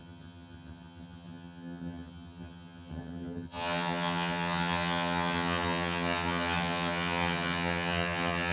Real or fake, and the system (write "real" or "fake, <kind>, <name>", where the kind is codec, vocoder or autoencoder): fake, vocoder, HiFi-GAN